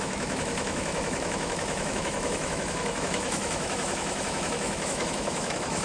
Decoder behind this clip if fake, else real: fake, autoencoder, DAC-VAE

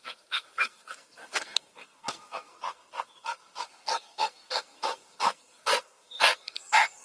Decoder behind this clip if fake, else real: fake, codec, SNAC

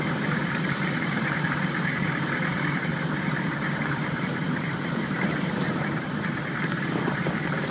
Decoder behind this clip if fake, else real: fake, vocoder, BigVGAN v2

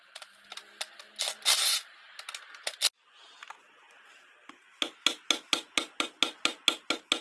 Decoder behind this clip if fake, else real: real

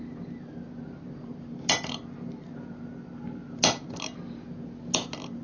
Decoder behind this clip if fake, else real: real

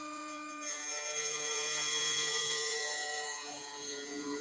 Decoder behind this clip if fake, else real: fake, vocoder, Vocos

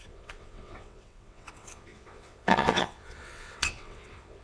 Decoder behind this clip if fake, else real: fake, vocoder, WaveNeXt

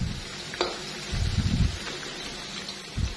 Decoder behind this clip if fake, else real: real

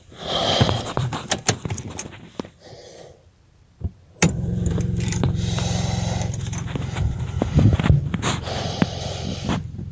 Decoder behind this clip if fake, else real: fake, vocoder, BigVGAN v2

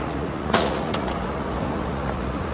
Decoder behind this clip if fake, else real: fake, vocoder, Vocos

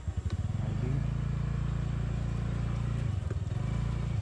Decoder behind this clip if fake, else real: real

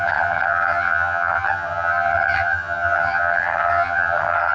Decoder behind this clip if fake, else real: fake, vocoder, HiFi-GAN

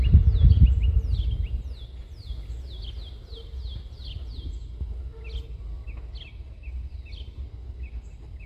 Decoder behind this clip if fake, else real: real